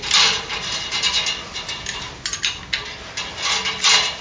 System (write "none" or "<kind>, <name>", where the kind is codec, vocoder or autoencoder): none